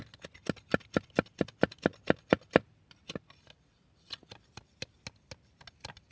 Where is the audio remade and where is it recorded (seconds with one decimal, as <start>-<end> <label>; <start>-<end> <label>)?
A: 0.0-6.1 recorded